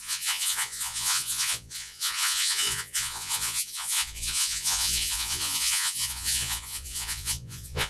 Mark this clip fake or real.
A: fake